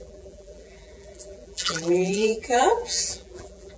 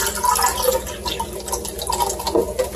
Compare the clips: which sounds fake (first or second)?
first